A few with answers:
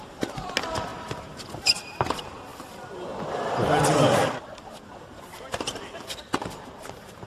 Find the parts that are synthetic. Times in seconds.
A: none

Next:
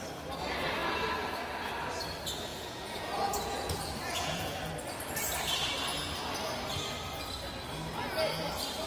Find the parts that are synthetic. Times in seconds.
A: 2.5-4.6 (vocoder, Vocos)

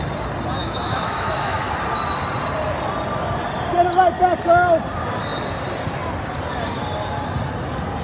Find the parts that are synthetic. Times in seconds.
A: 0.6-1.7 (autoencoder, DAC-VAE)

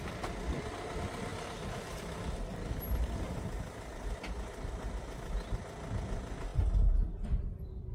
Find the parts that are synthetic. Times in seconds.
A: none

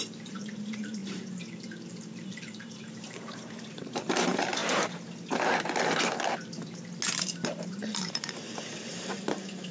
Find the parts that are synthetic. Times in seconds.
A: 0.0-4.6 (vocoder, BigVGAN v2); 7.2-9.7

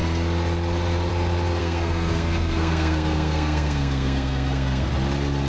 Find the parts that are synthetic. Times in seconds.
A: 1.6-4.9 (codec, SNAC)

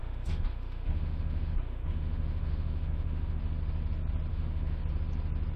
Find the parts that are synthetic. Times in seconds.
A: 0.0-3.4 (autoencoder, DAC-VAE); 4.3-4.8

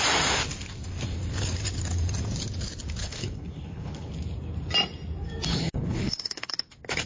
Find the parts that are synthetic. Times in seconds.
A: 3.0-4.1 (codec, HILCodec); 5.5-6.5